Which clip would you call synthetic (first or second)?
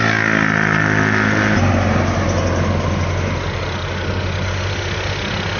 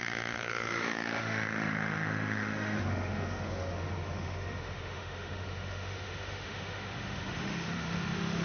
second